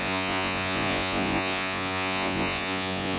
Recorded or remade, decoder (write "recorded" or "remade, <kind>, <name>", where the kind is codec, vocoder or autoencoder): remade, vocoder, Vocos